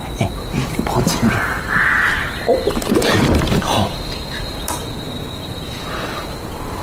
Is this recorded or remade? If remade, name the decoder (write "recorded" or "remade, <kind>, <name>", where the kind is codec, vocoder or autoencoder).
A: remade, vocoder, BigVGAN v2